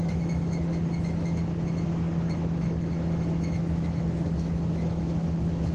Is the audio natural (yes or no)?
no